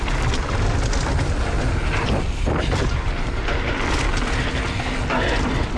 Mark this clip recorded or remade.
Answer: recorded